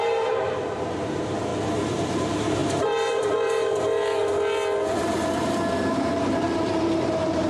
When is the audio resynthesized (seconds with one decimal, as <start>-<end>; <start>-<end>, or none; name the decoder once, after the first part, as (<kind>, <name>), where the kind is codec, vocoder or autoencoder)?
0.0-1.5 (vocoder, BigVGAN v2); 2.1-4.2; 5.3-7.5